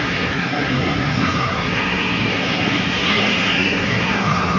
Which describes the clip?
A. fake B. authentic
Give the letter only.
A